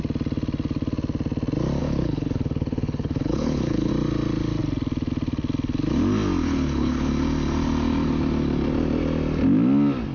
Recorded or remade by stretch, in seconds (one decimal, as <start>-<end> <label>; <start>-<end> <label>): 0.0-1.8 recorded; 1.8-3.9 remade; 3.9-6.4 recorded; 6.4-7.1 remade; 7.1-10.1 recorded